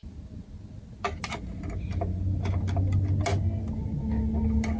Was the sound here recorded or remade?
recorded